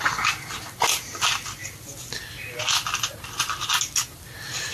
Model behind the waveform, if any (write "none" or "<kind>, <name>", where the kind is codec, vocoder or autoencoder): none